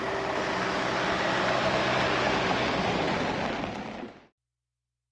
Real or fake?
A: real